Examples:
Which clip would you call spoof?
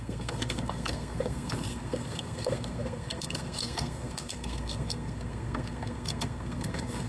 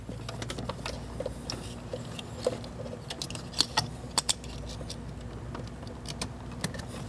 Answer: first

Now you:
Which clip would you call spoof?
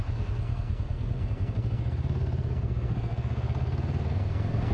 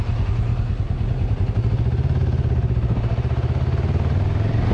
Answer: first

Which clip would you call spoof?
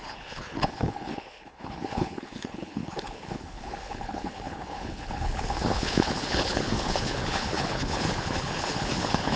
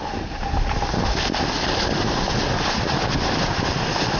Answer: first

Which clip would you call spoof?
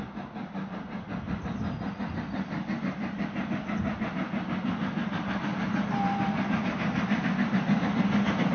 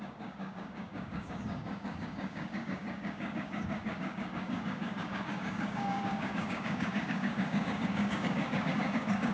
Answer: second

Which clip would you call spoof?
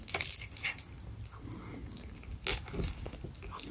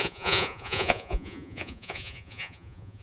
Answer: second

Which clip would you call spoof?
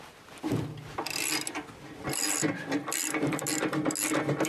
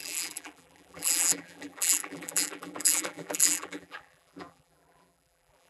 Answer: second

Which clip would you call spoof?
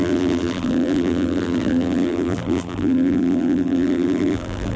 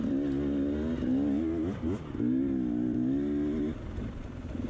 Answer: first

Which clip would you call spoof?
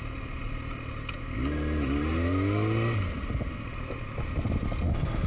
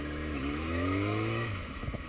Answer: second